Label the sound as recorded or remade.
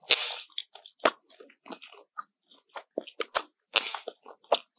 recorded